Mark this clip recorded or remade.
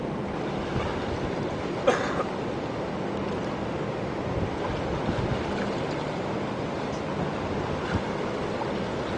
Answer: recorded